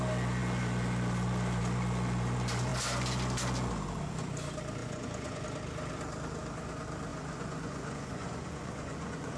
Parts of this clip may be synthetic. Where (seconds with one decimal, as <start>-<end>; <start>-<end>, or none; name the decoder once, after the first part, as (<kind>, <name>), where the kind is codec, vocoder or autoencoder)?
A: 4.8-5.4 (vocoder, Vocos); 7.1-9.4